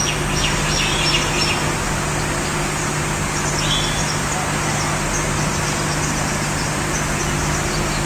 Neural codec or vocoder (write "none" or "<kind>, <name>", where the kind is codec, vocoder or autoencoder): none